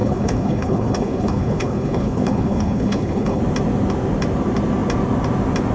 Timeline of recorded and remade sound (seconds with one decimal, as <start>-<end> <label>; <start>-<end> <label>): 0.0-3.4 remade; 3.4-5.7 recorded